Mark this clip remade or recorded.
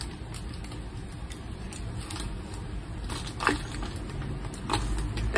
recorded